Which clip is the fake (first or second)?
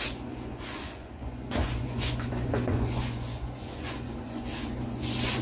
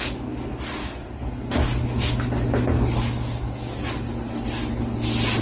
first